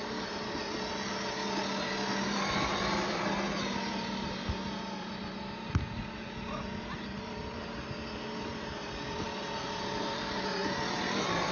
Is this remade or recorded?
recorded